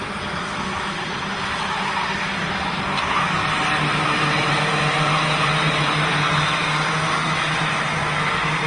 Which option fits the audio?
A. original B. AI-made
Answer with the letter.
A